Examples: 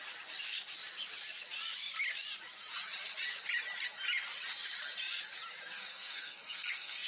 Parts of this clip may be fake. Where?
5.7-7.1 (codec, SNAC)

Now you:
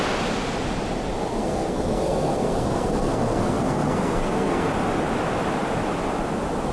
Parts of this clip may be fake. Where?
1.2-4.7 (codec, SNAC)